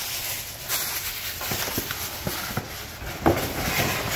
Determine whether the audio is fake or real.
real